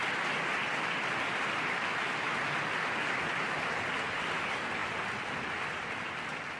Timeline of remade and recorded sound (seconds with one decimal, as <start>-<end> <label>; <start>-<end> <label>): 0.0-6.6 recorded